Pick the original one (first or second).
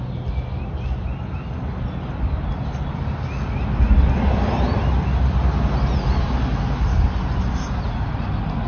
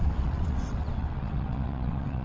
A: first